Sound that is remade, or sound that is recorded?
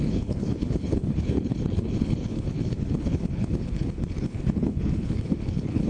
remade